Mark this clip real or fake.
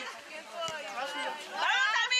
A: real